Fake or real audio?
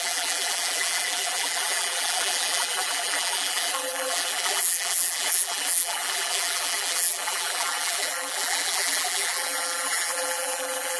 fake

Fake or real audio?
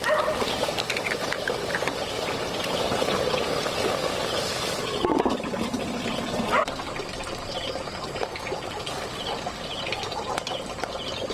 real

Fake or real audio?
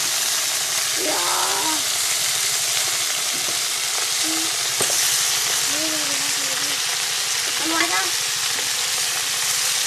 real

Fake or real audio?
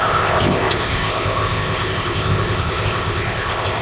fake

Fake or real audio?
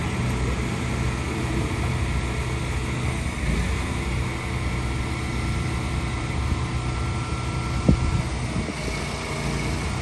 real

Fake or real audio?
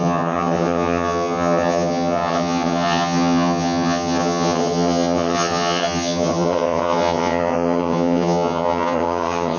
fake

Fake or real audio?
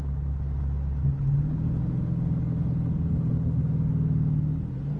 real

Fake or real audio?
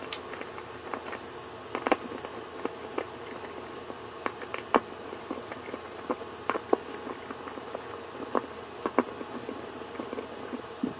real